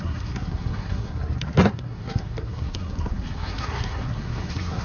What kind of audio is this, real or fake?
fake